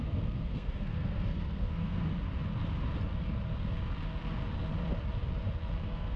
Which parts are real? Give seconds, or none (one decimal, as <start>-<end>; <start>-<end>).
2.1-5.8